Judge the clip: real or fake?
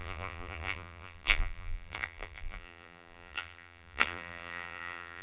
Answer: fake